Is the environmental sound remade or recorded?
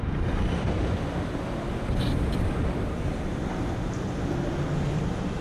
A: recorded